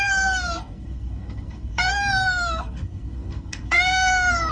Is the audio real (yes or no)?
no